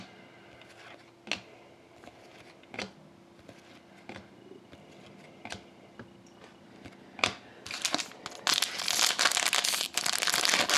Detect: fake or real real